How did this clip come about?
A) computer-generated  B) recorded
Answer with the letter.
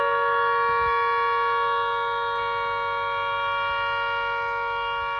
B